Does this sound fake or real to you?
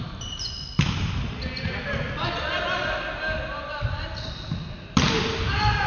real